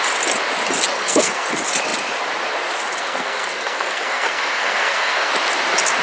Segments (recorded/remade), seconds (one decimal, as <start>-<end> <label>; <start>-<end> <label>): 0.0-0.9 recorded; 0.9-1.5 remade; 1.5-3.0 recorded; 3.0-5.3 remade; 5.3-6.0 recorded